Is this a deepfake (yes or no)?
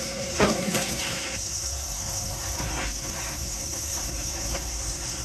yes